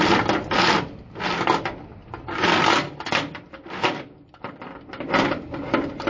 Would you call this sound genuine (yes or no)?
yes